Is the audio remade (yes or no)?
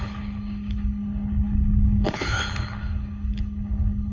yes